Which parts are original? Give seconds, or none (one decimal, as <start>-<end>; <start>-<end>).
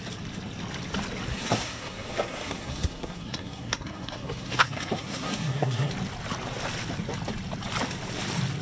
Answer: 0.0-1.3; 5.9-8.6